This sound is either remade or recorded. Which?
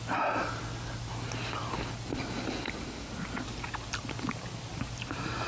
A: recorded